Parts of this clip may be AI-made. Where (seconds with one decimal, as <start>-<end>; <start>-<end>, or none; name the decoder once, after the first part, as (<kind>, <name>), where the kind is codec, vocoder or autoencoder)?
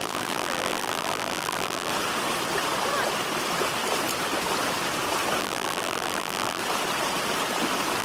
0.0-1.9 (vocoder, BigVGAN v2); 5.4-6.6